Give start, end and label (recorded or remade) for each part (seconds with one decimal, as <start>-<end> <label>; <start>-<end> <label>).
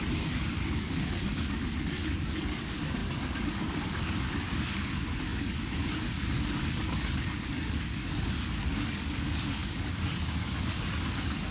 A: 0.0-11.5 remade